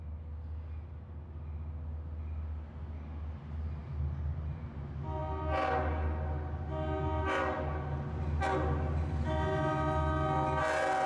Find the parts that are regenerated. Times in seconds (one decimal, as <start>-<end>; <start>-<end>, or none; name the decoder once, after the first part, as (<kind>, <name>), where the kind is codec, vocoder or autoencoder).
none